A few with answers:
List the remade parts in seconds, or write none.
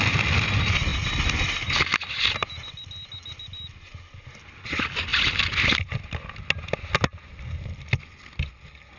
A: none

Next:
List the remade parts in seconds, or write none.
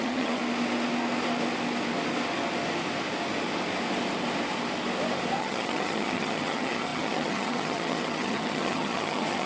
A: 0.0-0.4 (vocoder, HiFi-GAN); 5.4-9.5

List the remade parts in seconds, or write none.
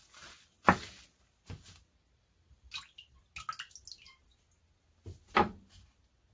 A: none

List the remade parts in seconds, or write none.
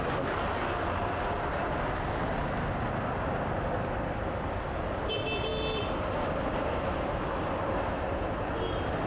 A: none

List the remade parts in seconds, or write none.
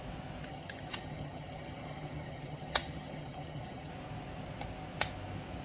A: 0.5-3.9 (vocoder, HiFi-GAN)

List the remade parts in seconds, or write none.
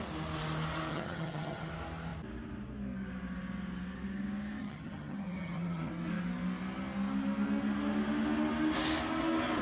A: 0.9-1.7 (vocoder, HiFi-GAN); 4.6-5.9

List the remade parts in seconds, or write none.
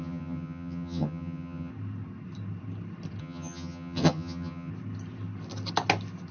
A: 0.0-1.7 (vocoder, HiFi-GAN); 3.2-4.7